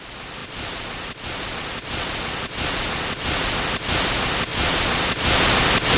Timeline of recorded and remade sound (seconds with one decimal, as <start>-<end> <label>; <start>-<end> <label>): 0.0-0.4 recorded; 0.4-3.6 remade; 3.6-4.5 recorded; 4.5-5.5 remade; 5.5-6.0 recorded